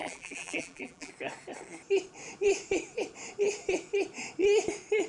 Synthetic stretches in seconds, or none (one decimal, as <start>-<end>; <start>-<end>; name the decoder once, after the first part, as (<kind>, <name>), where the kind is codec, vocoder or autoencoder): 0.0-1.1 (vocoder, BigVGAN v2)